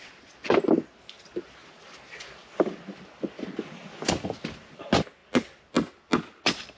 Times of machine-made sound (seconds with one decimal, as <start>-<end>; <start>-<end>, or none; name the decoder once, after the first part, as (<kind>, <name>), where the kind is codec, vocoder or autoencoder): none